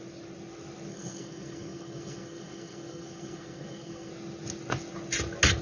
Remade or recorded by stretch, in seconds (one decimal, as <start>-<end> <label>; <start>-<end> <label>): 0.0-0.9 recorded; 0.9-4.1 remade; 4.1-5.6 recorded